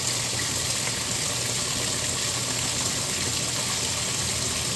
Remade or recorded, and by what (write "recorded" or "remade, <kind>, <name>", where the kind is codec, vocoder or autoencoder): recorded